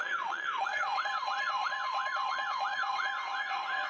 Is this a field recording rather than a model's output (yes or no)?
no